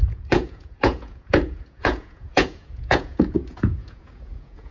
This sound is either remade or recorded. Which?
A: remade